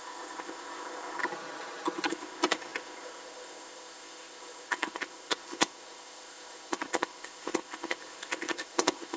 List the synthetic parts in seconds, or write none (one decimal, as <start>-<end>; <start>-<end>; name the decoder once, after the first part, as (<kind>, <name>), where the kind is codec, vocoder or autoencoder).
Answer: 0.0-1.2 (codec, ZipCodec); 2.1-9.2